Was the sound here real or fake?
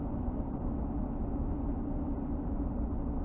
real